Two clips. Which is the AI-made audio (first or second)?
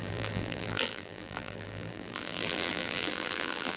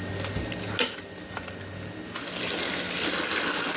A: first